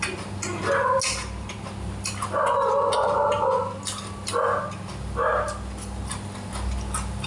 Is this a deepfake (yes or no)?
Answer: no